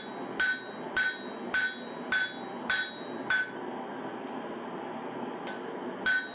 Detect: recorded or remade recorded